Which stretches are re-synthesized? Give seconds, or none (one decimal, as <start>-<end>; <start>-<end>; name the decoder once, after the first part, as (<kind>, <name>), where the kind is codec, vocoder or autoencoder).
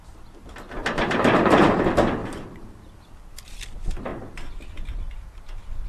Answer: 0.8-1.8 (vocoder, BigVGAN v2); 2.2-2.7